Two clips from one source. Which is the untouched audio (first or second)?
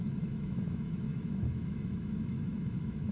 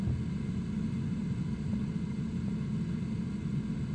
second